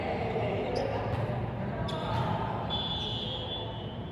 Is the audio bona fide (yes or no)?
no